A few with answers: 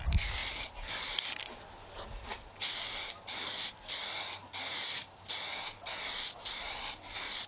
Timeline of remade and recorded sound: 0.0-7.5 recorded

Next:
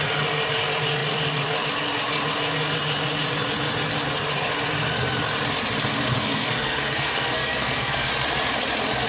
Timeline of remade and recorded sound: 0.0-6.2 recorded; 6.2-8.1 remade; 8.1-9.1 recorded

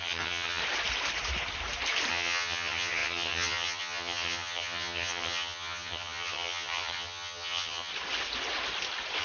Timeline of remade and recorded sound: 0.0-0.6 remade; 0.6-2.1 recorded; 2.1-7.9 remade; 7.9-9.2 recorded